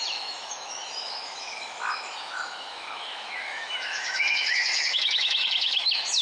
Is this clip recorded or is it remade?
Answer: remade